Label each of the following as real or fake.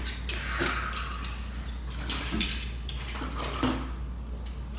real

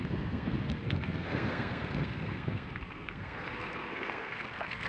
fake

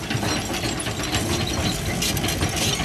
real